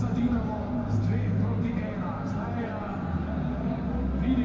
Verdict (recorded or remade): recorded